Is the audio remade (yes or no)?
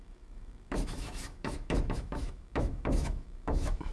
yes